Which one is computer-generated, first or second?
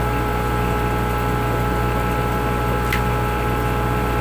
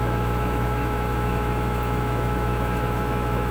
second